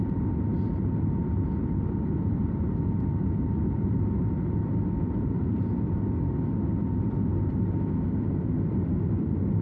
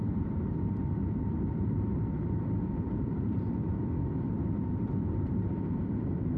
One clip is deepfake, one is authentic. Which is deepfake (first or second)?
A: second